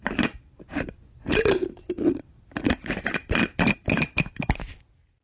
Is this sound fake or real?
real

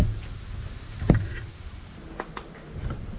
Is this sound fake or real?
real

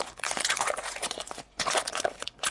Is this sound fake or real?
fake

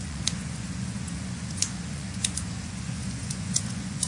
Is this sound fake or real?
fake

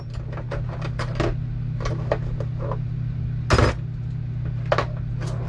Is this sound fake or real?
real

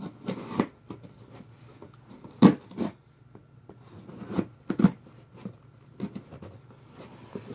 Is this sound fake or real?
real